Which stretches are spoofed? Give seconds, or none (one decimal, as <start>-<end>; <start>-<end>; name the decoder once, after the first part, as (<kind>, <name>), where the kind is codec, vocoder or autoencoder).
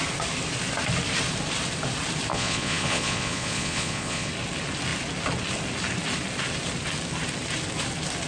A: 2.3-4.3 (vocoder, Vocos)